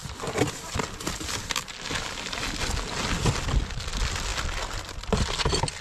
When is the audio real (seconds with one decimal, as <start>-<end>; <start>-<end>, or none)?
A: 0.0-5.8